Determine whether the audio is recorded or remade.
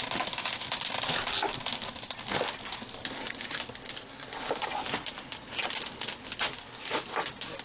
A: recorded